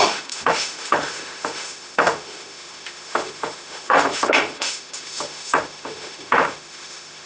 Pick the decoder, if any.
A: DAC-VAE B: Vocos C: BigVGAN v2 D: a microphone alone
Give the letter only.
A